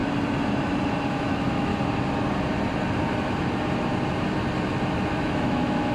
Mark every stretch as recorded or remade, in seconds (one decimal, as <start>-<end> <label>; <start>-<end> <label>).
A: 0.0-1.1 recorded; 1.1-1.7 remade; 1.7-5.2 recorded; 5.2-5.9 remade